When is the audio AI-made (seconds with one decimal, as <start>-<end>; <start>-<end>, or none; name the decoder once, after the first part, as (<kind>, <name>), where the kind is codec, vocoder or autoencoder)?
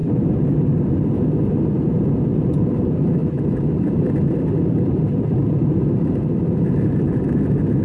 1.7-7.8 (vocoder, BigVGAN v2)